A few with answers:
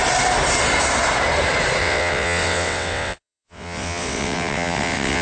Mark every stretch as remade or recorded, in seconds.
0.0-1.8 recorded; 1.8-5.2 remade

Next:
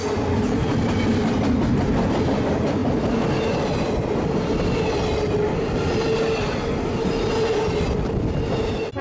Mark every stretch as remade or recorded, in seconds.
0.0-9.0 recorded

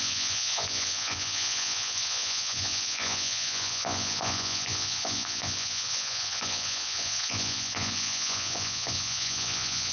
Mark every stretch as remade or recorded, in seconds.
0.0-9.9 remade

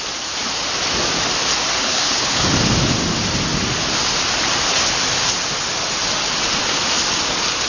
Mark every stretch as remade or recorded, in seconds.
0.0-1.8 recorded; 1.8-2.5 remade; 2.5-7.7 recorded

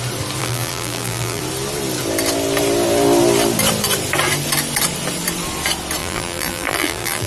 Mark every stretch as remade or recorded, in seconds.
0.0-0.4 recorded; 0.4-1.4 remade; 1.4-6.0 recorded; 6.0-7.3 remade

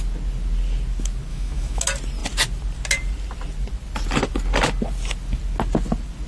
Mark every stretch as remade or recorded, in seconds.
0.0-1.3 recorded; 1.3-1.8 remade; 1.8-6.3 recorded